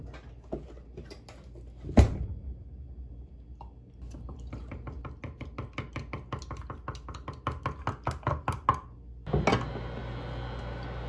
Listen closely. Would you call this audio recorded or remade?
recorded